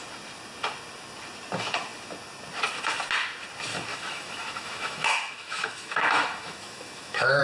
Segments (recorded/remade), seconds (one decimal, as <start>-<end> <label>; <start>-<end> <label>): 0.0-3.9 recorded; 3.9-7.4 remade